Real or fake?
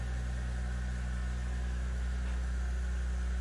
real